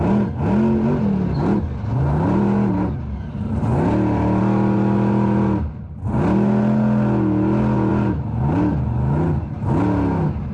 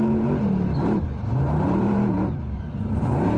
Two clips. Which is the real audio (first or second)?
first